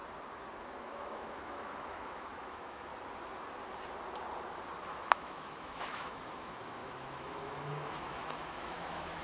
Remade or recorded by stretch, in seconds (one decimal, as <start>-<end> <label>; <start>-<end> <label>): 0.0-0.8 recorded; 0.8-2.9 remade; 2.9-5.1 recorded; 5.1-9.2 remade